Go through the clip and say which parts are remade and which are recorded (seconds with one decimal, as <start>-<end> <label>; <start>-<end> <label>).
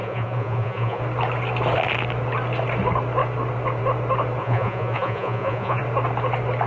0.0-1.0 remade; 1.0-4.4 recorded; 4.4-5.8 remade; 5.8-6.7 recorded